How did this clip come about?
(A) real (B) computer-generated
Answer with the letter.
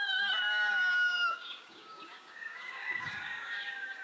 B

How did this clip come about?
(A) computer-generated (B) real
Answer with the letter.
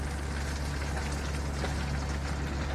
B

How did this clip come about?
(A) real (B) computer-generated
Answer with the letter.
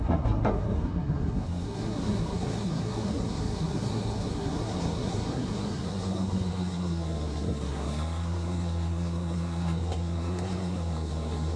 B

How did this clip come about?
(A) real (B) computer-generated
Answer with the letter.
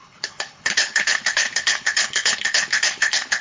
B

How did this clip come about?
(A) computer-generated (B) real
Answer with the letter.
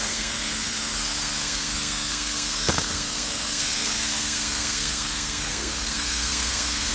A